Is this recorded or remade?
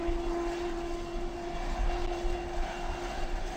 recorded